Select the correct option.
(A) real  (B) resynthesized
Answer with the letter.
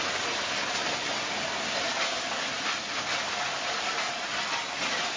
A